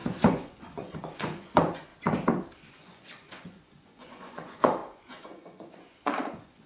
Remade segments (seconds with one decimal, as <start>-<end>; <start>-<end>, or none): 0.0-1.9; 2.7-6.7